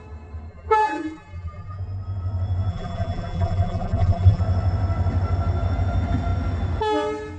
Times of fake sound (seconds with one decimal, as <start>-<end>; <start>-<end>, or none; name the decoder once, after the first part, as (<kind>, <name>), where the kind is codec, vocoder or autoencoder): 0.5-1.8 (vocoder, BigVGAN v2); 2.7-4.4